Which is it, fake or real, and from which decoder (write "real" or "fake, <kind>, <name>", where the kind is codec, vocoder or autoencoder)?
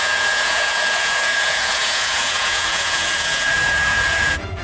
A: fake, vocoder, Vocos